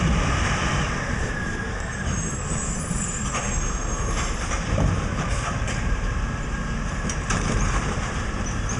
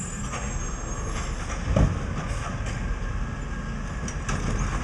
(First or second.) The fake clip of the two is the first